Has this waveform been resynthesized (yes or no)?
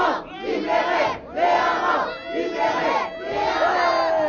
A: no